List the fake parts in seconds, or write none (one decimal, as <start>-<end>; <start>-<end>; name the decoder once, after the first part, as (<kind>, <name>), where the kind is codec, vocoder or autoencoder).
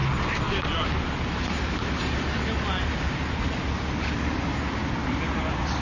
none